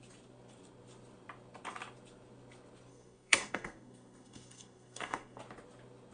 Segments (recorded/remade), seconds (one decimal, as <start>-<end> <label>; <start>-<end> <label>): 0.0-2.9 recorded; 2.9-5.4 remade; 5.4-6.1 recorded